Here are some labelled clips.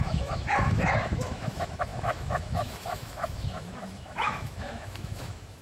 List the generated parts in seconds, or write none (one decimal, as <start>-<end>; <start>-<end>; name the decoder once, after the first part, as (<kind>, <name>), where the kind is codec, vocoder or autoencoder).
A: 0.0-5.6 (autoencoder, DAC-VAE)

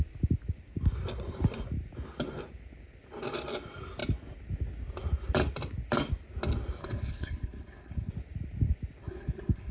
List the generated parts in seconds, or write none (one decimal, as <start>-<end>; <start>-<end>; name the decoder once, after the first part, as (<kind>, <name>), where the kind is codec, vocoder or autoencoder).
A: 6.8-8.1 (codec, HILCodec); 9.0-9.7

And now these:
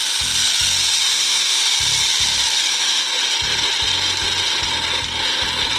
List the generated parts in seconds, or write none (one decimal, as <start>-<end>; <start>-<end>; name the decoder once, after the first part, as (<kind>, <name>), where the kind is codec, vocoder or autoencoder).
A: 1.0-1.6 (autoencoder, DAC-VAE); 2.7-3.1

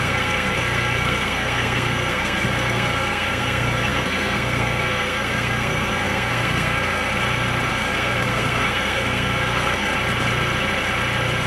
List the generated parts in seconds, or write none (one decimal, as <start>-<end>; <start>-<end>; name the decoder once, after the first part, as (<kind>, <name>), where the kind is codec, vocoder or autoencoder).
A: 0.0-7.1 (codec, SNAC); 7.7-9.9

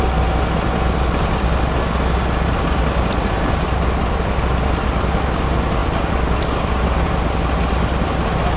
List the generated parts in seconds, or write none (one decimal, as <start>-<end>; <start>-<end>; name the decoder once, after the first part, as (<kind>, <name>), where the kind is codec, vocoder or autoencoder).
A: none

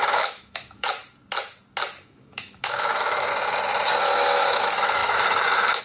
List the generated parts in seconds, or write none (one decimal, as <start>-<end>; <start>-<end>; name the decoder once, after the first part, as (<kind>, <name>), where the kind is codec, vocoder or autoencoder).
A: 0.0-1.0 (autoencoder, DAC-VAE); 2.0-3.3; 4.0-5.8

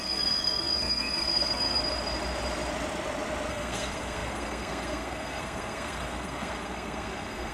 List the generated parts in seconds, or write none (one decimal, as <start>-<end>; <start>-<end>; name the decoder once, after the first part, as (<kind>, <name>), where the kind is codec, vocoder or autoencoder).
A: 0.0-1.8 (codec, SNAC); 3.5-7.5